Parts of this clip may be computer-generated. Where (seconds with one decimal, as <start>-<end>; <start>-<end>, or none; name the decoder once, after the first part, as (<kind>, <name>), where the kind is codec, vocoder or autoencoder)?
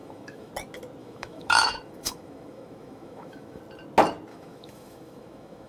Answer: 0.0-0.5 (autoencoder, DAC-VAE); 1.0-3.6; 4.3-5.7